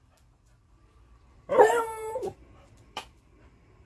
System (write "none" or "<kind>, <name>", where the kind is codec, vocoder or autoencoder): vocoder, BigVGAN v2